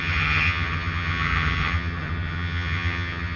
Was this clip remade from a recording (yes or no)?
yes